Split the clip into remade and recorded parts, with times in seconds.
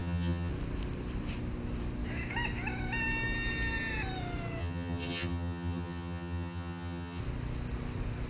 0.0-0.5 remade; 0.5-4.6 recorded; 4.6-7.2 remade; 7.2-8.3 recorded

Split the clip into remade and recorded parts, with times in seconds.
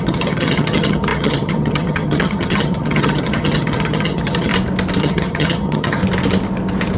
0.0-4.5 remade; 4.5-5.0 recorded; 5.0-6.0 remade; 6.0-7.0 recorded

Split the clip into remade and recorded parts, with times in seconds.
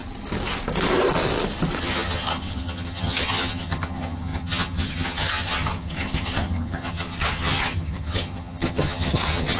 0.0-1.8 recorded; 1.8-9.6 remade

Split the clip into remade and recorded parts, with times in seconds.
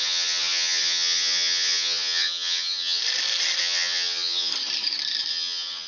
0.0-3.0 remade; 3.0-3.6 recorded; 3.6-4.5 remade; 4.5-5.3 recorded; 5.3-5.9 remade